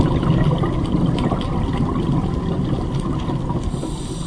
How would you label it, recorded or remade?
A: recorded